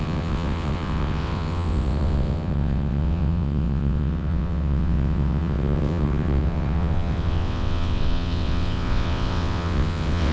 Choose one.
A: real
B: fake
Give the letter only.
B